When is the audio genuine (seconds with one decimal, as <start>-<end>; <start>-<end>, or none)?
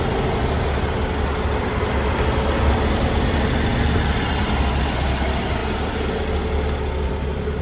0.0-7.6